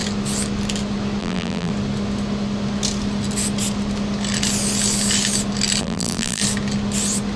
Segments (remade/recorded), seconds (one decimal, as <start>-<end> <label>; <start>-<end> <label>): 0.0-1.2 recorded; 1.2-1.7 remade; 1.7-5.8 recorded; 5.8-6.4 remade; 6.4-7.4 recorded